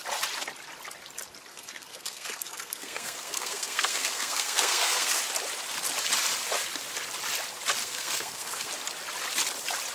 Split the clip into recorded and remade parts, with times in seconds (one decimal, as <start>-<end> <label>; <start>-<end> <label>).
0.0-1.5 recorded; 1.5-5.2 remade; 5.2-7.8 recorded; 7.8-8.7 remade; 8.7-9.9 recorded